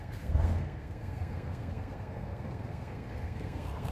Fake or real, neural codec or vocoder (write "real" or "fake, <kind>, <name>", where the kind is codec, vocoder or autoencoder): fake, codec, SNAC